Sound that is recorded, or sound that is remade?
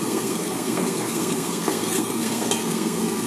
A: remade